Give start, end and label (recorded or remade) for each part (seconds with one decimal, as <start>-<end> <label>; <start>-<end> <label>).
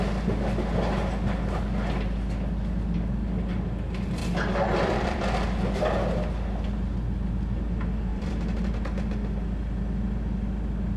0.0-4.2 recorded; 4.2-5.8 remade; 5.8-8.1 recorded; 8.1-8.7 remade; 8.7-11.0 recorded